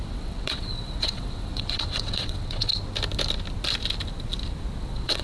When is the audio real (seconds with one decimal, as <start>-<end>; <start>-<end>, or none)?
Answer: 2.7-4.8